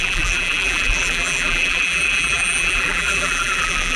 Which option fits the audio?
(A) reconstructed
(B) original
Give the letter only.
A